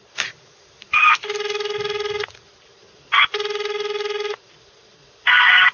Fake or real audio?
real